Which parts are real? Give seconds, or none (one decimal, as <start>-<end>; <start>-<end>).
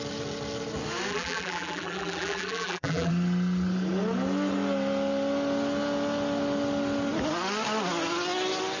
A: 0.0-1.1; 3.1-8.8